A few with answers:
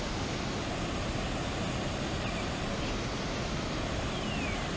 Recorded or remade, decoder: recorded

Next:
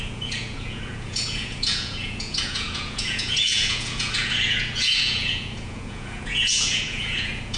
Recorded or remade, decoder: remade, vocoder, Vocos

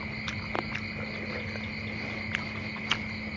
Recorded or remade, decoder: recorded